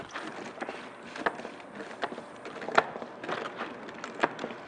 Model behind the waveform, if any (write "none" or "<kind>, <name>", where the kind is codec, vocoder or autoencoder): none